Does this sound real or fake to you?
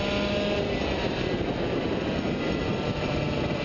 real